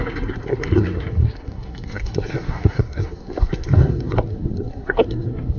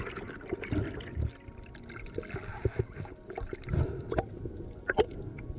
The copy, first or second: first